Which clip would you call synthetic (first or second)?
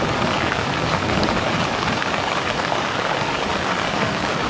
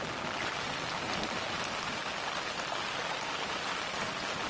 first